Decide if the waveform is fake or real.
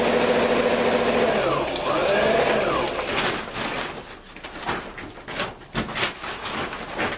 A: real